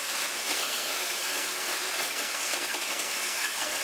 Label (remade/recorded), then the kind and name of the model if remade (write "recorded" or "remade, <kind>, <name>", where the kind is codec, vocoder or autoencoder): remade, codec, SNAC